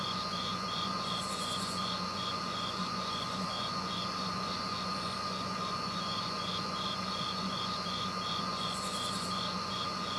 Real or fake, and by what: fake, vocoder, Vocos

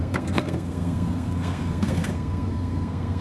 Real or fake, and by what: fake, codec, SNAC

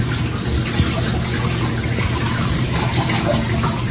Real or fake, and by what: real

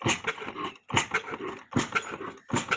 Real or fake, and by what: real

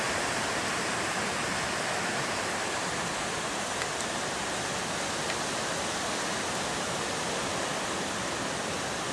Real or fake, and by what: real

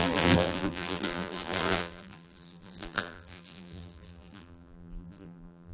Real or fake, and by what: fake, vocoder, BigVGAN v2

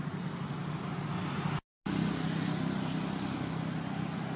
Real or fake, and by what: real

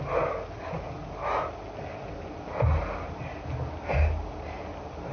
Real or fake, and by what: real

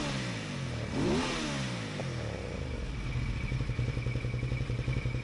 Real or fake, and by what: real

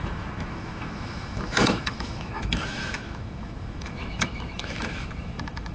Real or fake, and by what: fake, autoencoder, DAC-VAE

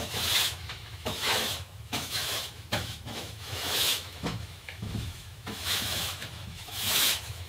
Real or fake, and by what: fake, autoencoder, DAC-VAE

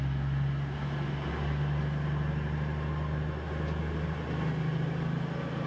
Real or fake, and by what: real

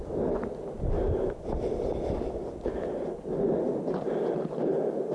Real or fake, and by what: real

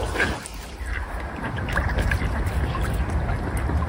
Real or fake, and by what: real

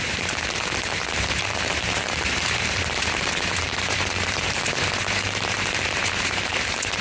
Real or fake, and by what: fake, vocoder, BigVGAN v2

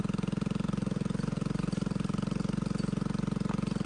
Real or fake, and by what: real